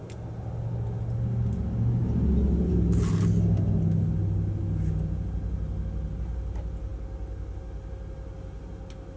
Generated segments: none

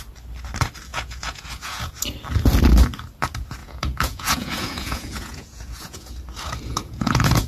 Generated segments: 0.9-1.9; 3.6-6.1; 6.7-7.5

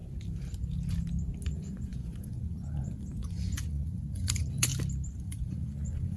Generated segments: 1.5-4.7; 5.2-6.2

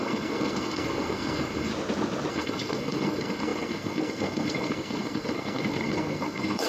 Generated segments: 0.0-1.7; 2.3-6.7

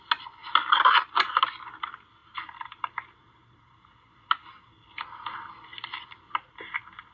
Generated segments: 2.2-3.8

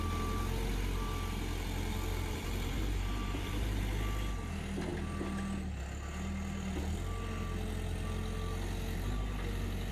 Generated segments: 2.1-3.8

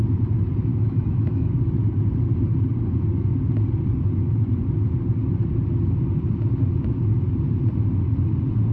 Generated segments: 0.7-1.6

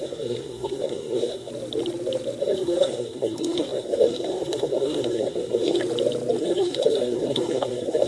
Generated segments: 0.0-1.5; 2.4-5.8; 6.4-8.1